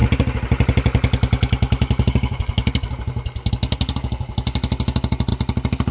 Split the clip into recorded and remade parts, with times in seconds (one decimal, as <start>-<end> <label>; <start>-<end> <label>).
0.0-5.9 recorded